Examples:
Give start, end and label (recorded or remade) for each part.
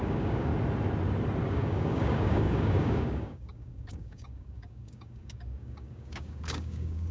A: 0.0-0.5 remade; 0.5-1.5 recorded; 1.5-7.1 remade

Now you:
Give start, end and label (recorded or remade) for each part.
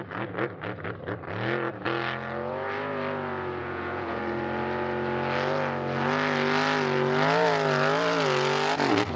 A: 0.0-3.6 recorded; 3.6-4.2 remade; 4.2-9.2 recorded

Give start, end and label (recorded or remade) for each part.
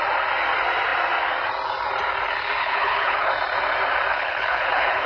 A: 0.0-2.6 recorded; 2.6-3.3 remade; 3.3-4.1 recorded; 4.1-5.1 remade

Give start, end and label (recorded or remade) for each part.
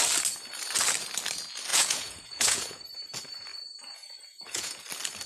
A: 0.0-1.7 recorded; 1.7-2.8 remade; 2.8-3.5 recorded; 3.5-4.8 remade; 4.8-5.3 recorded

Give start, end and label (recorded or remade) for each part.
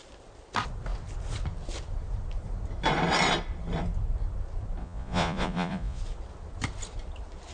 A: 0.0-4.8 recorded; 4.8-6.0 remade; 6.0-7.5 recorded